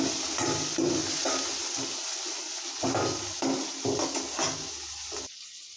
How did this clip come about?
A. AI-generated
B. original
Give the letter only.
B